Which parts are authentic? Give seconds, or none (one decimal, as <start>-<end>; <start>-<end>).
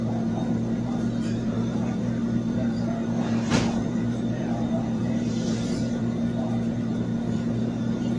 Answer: none